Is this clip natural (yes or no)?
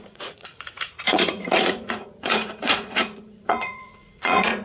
no